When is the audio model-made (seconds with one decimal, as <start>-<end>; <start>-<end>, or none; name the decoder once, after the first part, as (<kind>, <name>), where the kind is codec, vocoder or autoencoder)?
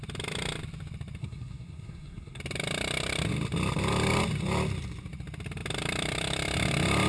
1.2-2.4 (codec, SNAC)